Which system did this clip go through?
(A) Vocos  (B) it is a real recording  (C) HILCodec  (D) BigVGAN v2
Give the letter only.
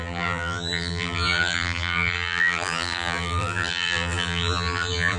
D